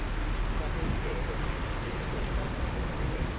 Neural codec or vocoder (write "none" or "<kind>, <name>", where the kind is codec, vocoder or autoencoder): none